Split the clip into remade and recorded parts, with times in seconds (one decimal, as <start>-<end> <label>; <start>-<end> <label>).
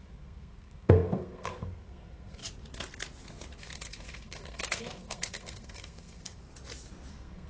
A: 0.0-2.4 remade; 2.4-3.6 recorded; 3.6-6.4 remade; 6.4-7.1 recorded; 7.1-7.5 remade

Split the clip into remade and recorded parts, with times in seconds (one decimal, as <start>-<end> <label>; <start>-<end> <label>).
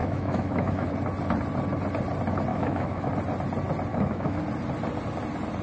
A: 0.0-0.9 remade; 0.9-2.5 recorded; 2.5-3.1 remade; 3.1-3.9 recorded; 3.9-4.4 remade; 4.4-5.6 recorded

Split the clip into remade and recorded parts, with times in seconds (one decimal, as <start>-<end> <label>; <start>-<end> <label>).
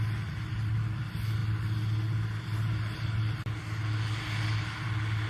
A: 0.0-5.3 recorded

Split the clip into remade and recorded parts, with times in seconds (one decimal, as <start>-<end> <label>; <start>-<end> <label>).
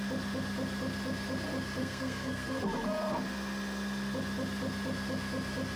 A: 0.0-1.8 recorded; 1.8-2.6 remade; 2.6-5.8 recorded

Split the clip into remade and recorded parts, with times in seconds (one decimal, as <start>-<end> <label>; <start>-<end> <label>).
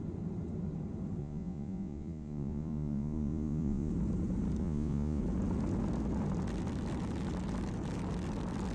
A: 0.0-1.2 recorded; 1.2-3.9 remade; 3.9-4.6 recorded; 4.6-5.2 remade; 5.2-8.7 recorded